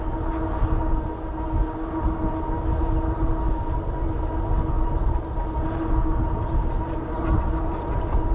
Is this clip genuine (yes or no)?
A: yes